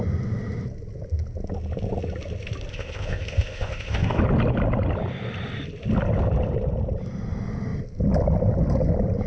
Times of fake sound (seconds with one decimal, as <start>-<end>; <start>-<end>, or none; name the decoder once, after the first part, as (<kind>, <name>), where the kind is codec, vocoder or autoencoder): 2.7-4.2 (codec, ZipCodec)